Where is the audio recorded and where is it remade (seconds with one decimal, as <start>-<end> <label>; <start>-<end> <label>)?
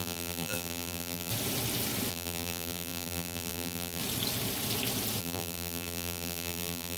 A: 0.0-1.3 remade; 1.3-2.1 recorded; 2.1-4.0 remade; 4.0-5.2 recorded; 5.2-7.0 remade